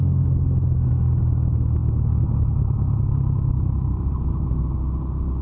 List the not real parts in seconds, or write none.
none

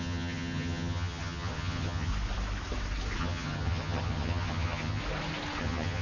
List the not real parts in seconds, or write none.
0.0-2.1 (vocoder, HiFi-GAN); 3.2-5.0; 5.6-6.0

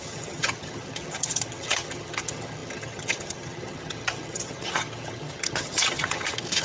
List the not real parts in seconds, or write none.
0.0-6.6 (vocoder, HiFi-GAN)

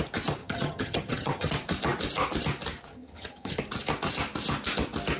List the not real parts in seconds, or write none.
0.4-1.5 (vocoder, HiFi-GAN); 2.9-3.6

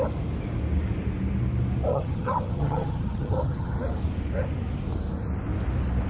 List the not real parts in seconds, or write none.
1.9-3.8 (vocoder, HiFi-GAN)

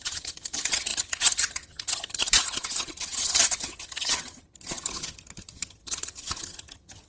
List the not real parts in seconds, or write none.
0.0-7.1 (vocoder, HiFi-GAN)